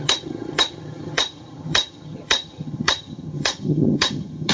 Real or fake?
fake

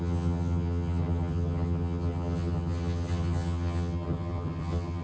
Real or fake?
fake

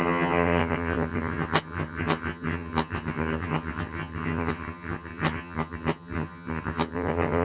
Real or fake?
fake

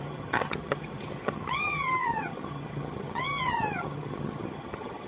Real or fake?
fake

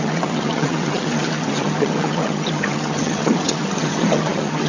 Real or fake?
fake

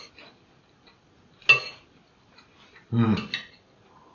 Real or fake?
real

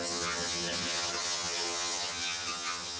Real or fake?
fake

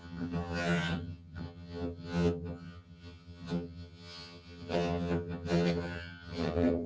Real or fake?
fake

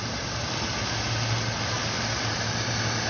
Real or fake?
real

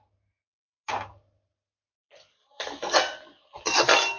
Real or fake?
real